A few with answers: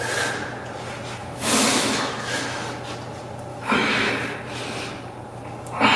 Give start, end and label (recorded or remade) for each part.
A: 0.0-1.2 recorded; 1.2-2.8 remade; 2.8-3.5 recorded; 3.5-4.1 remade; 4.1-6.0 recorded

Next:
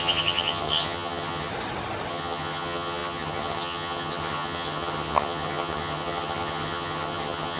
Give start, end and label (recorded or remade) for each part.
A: 0.0-1.5 remade; 1.5-2.1 recorded; 2.1-7.6 remade

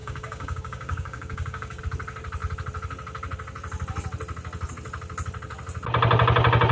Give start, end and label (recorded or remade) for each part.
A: 0.0-1.8 remade; 1.8-6.7 recorded

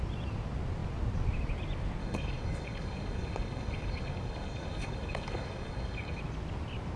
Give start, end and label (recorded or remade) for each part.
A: 0.0-2.0 recorded; 2.0-6.2 remade; 6.2-7.0 recorded

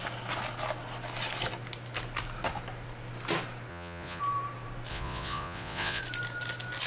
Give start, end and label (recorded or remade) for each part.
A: 0.0-3.7 recorded; 3.7-4.2 remade; 4.2-4.9 recorded; 4.9-6.0 remade; 6.0-6.9 recorded